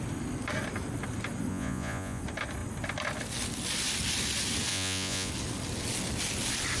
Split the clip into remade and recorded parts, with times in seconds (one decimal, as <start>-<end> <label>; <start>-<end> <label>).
0.0-1.5 recorded; 1.5-2.2 remade; 2.2-4.7 recorded; 4.7-5.3 remade; 5.3-6.8 recorded